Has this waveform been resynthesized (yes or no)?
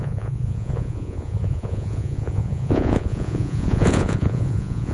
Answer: yes